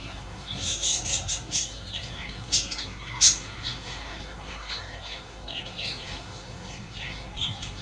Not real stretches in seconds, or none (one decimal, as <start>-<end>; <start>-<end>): 0.0-7.8